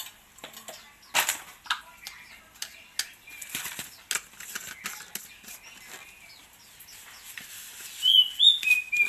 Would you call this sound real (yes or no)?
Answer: yes